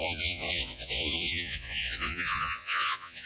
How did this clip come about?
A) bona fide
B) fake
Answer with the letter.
B